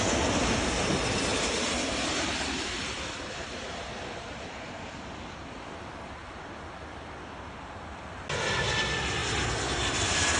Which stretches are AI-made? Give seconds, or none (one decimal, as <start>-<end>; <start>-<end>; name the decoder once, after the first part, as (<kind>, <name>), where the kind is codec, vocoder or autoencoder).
1.3-3.8 (vocoder, BigVGAN v2); 9.2-10.4